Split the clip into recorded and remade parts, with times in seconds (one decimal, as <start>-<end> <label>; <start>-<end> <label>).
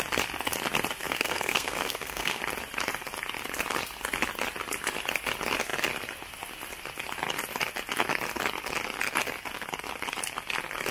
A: 0.0-1.0 recorded; 1.0-2.4 remade; 2.4-10.9 recorded